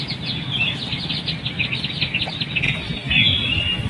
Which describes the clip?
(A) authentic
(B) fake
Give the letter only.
A